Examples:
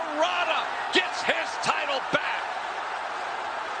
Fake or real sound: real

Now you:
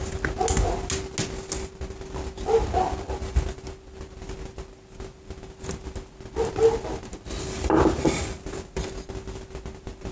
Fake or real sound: real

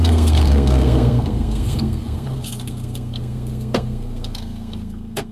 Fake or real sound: fake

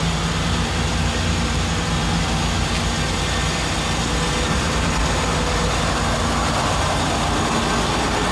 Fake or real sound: real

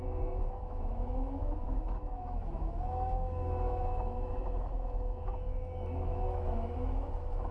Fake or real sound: fake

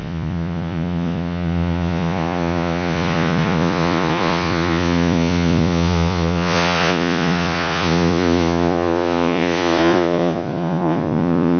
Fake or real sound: fake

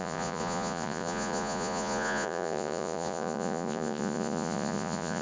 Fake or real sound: fake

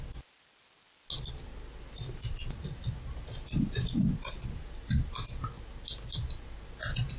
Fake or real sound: real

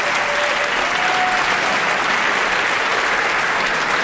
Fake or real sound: real